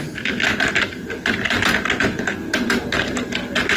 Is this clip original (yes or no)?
yes